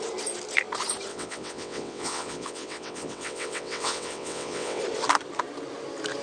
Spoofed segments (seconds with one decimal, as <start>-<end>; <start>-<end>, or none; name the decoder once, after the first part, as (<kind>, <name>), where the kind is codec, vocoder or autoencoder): 1.1-4.8 (vocoder, WaveNeXt)